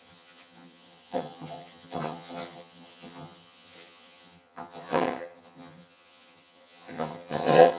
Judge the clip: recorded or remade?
remade